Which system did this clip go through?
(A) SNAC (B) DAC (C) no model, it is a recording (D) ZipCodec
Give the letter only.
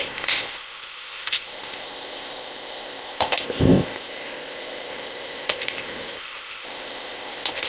D